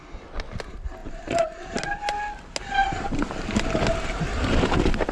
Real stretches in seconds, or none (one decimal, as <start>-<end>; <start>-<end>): 0.0-1.0; 1.7-2.8; 3.7-5.1